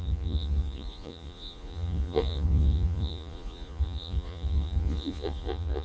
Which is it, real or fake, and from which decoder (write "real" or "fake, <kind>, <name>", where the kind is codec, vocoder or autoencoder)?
fake, vocoder, Vocos